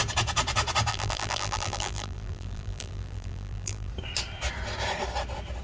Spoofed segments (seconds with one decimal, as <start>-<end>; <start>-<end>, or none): 0.9-3.9